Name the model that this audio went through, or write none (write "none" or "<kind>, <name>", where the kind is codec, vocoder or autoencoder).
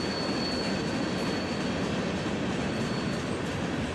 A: none